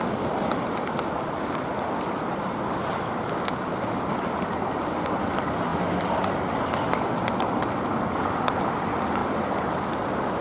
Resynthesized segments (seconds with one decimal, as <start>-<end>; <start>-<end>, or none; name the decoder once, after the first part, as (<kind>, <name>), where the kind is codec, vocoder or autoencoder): 9.2-9.7 (vocoder, BigVGAN v2)